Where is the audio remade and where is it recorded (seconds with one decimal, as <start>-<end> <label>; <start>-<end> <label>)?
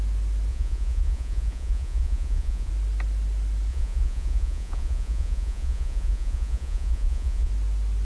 0.0-0.5 recorded; 0.5-2.7 remade; 2.7-3.7 recorded; 3.7-7.5 remade; 7.5-8.0 recorded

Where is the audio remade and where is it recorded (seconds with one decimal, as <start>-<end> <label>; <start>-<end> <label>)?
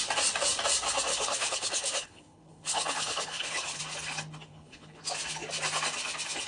0.0-1.1 recorded; 1.1-3.8 remade; 3.8-4.5 recorded; 4.5-5.0 remade; 5.0-6.5 recorded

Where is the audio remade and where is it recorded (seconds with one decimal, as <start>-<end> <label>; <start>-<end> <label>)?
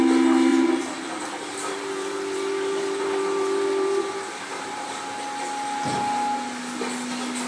0.0-0.5 recorded; 0.5-5.0 remade; 5.0-7.5 recorded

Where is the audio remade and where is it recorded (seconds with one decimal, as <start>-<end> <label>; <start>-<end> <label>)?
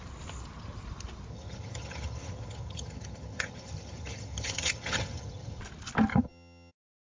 0.0-1.3 recorded; 1.3-5.6 remade; 5.6-6.1 recorded; 6.1-6.7 remade; 6.7-7.2 recorded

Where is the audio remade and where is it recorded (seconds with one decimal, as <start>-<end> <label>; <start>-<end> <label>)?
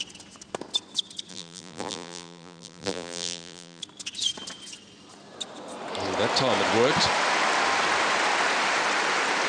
0.0-1.3 recorded; 1.3-3.8 remade; 3.8-9.5 recorded